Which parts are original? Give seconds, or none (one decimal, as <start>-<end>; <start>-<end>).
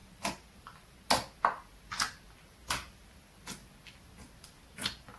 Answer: 0.0-5.2